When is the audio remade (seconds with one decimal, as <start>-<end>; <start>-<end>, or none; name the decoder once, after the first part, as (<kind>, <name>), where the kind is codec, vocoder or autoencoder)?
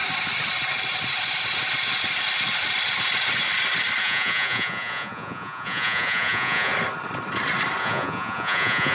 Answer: 4.0-6.7 (vocoder, Vocos); 7.8-8.9